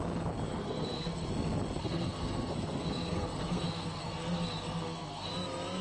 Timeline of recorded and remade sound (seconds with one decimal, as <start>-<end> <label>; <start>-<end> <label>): 0.0-0.5 recorded; 0.5-1.3 remade; 1.3-1.8 recorded; 1.8-5.3 remade; 5.3-5.8 recorded